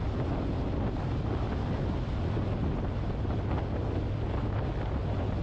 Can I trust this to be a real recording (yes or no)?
yes